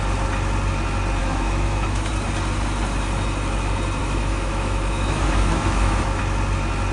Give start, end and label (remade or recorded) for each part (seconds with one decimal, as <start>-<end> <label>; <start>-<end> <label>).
0.0-1.2 recorded; 1.2-2.1 remade; 2.1-4.0 recorded; 4.0-6.2 remade; 6.2-6.9 recorded